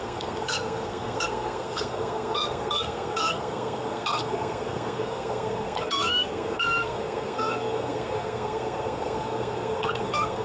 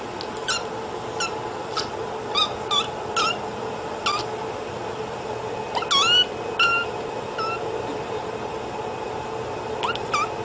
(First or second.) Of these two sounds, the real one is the second